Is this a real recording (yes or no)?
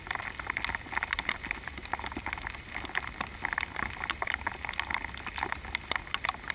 yes